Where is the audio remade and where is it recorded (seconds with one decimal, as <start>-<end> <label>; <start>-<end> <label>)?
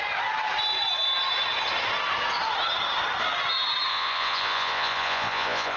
0.0-3.9 recorded; 3.9-5.8 remade